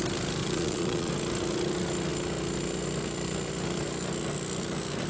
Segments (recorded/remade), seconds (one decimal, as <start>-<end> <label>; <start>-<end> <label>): 0.0-0.4 recorded; 0.4-1.1 remade; 1.1-5.1 recorded